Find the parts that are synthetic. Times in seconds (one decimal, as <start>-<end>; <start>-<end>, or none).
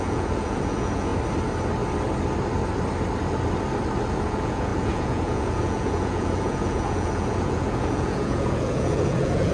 0.0-1.1; 4.1-9.5